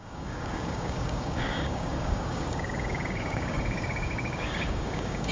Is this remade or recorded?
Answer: remade